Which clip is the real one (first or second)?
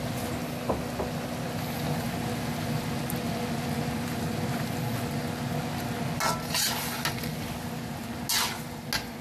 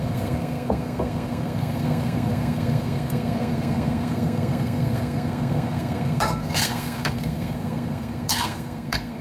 first